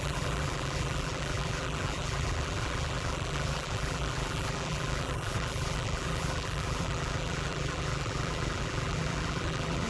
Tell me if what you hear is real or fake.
fake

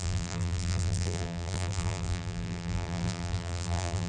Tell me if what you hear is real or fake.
fake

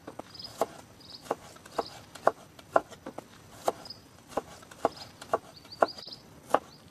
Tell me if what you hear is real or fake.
real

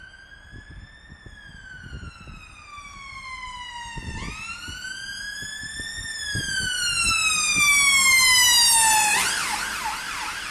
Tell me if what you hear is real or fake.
real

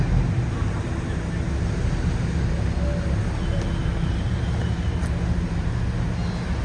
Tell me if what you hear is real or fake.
real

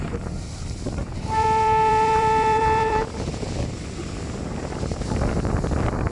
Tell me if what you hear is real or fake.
fake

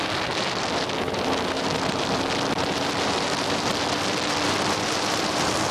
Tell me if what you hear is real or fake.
fake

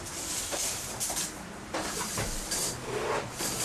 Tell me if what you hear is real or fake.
fake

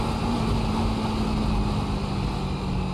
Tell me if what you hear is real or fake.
real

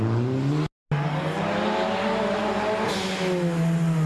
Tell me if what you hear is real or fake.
real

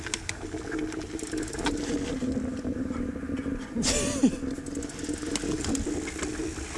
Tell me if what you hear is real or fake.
real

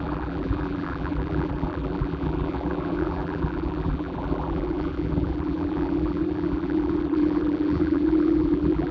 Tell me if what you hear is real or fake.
fake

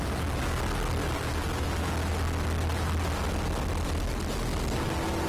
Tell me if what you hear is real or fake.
real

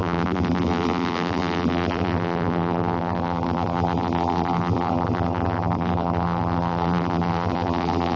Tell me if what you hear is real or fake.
fake